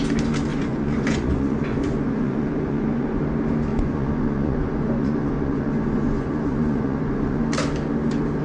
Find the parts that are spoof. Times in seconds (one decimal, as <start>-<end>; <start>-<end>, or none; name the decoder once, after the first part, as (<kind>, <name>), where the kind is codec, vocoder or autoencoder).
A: 0.5-3.2 (vocoder, Vocos); 3.7-7.4